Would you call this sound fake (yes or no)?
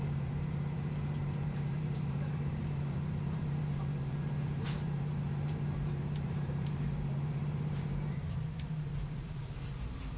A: yes